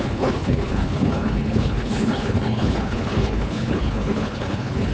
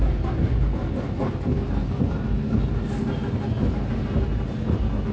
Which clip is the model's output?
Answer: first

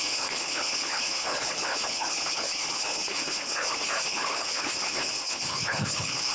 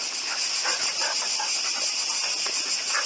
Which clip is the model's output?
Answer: first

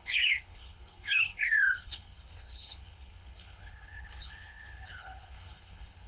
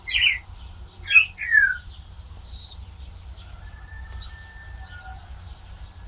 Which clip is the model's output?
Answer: first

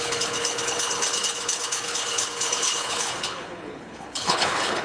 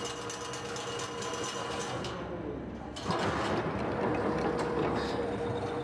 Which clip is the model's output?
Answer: first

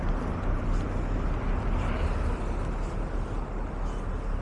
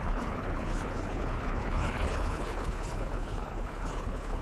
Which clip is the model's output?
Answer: second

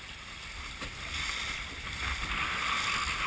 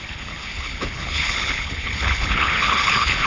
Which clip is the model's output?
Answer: second